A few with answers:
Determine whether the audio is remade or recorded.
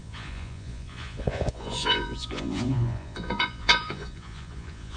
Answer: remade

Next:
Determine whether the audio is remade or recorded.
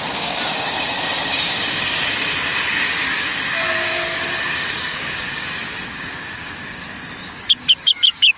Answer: remade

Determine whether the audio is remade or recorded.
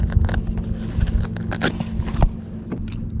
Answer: recorded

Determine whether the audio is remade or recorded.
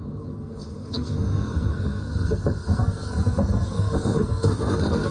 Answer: remade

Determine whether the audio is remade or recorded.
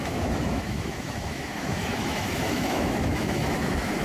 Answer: remade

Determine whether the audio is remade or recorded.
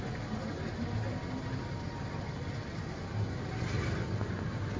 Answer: recorded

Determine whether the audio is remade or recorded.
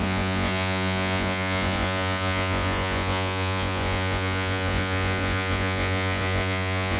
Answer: remade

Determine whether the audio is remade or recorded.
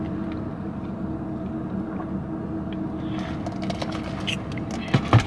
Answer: recorded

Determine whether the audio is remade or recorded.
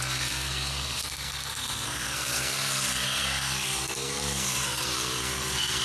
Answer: remade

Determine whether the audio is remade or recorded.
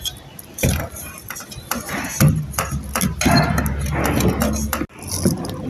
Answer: recorded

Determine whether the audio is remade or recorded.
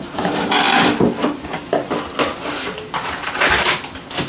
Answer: recorded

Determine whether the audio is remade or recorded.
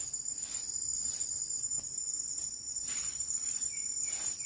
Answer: remade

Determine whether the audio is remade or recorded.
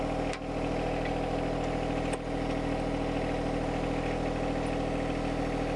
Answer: recorded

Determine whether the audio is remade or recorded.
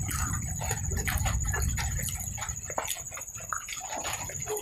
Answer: recorded